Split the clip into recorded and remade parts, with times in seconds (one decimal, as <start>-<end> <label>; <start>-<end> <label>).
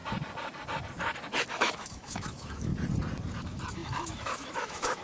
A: 0.0-1.5 recorded; 1.5-2.7 remade; 2.7-3.4 recorded; 3.4-5.0 remade